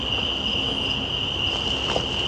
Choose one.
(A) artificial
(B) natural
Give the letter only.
B